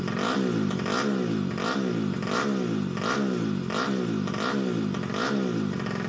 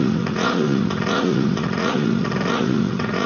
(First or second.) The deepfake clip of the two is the second